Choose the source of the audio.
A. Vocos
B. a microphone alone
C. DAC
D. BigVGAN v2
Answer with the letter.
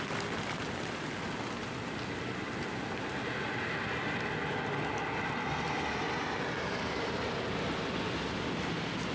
B